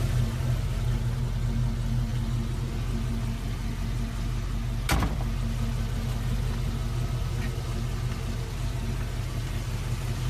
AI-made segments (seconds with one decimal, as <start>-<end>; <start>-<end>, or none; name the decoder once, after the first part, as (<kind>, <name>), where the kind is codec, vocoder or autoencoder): none